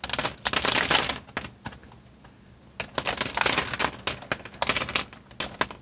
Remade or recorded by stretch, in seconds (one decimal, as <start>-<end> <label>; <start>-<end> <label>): 0.0-5.8 recorded